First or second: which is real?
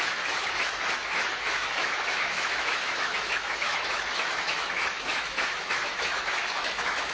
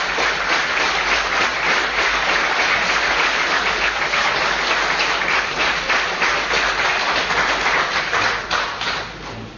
second